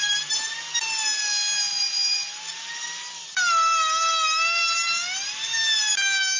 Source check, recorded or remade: recorded